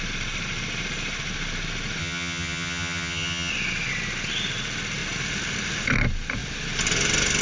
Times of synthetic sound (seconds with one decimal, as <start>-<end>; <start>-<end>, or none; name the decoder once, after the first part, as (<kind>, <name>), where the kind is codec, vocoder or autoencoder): 2.0-3.5 (vocoder, HiFi-GAN)